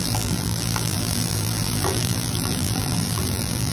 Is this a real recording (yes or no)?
no